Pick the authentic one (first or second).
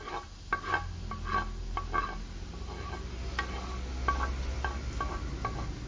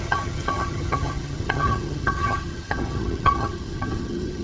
first